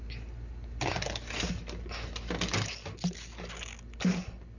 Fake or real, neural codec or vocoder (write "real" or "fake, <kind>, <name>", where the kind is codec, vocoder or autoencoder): real